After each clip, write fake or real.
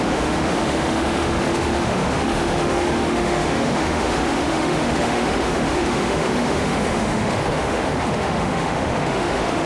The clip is fake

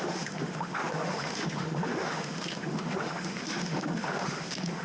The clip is fake